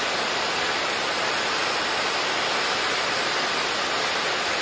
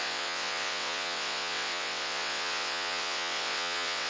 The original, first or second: first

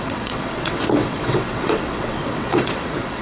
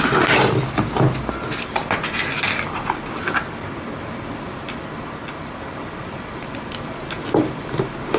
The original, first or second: second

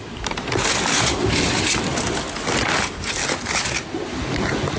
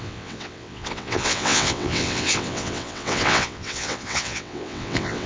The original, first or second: first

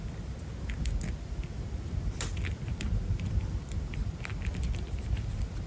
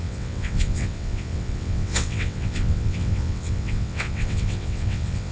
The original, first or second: first